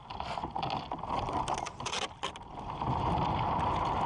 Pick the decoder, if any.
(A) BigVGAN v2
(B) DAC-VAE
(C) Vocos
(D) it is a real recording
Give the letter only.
D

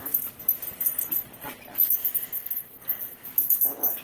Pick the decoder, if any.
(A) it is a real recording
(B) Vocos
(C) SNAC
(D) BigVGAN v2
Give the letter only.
D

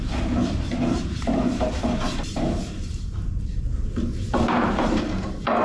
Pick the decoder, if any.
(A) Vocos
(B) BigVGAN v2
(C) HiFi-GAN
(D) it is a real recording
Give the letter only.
B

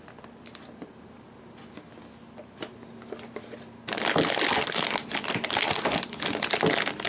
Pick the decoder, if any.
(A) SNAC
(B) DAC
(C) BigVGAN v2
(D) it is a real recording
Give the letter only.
D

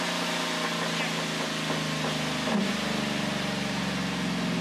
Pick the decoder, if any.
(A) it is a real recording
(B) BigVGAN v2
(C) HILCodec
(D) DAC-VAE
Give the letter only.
A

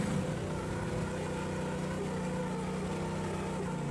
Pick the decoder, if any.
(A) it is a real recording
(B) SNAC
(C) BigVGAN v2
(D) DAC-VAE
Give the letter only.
A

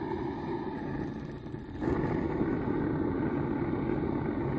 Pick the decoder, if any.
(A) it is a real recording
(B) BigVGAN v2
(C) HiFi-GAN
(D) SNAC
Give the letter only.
A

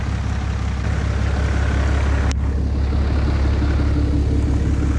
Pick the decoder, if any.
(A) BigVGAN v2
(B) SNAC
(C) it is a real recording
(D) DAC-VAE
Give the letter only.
C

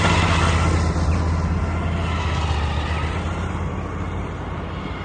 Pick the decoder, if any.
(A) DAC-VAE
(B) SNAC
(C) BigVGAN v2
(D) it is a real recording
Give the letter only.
D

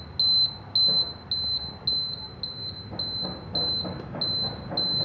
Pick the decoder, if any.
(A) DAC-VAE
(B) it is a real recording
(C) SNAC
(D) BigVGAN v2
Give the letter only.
B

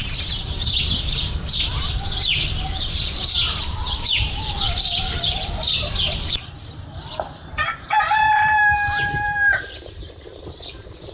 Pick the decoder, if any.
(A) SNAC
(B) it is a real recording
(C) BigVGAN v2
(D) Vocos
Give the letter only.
C